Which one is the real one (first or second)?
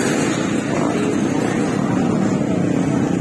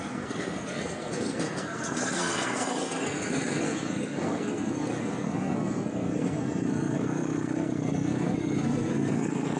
first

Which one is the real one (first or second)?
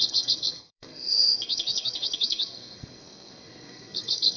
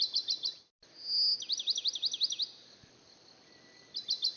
second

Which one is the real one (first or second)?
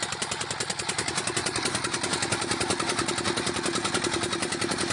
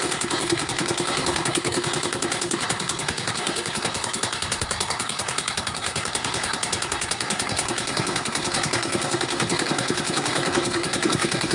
first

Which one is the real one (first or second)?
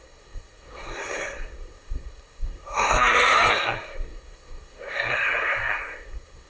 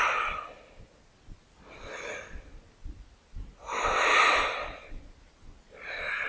second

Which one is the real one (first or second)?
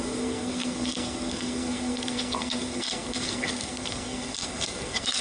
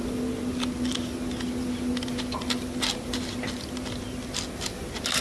second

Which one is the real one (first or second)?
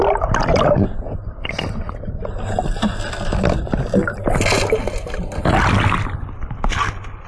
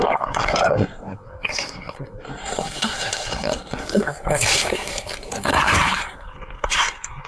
first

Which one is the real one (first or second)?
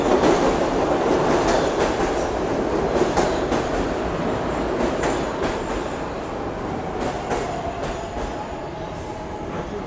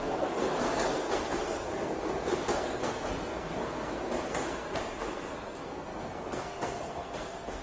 first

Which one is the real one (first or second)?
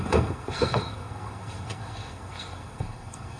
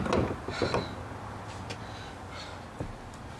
second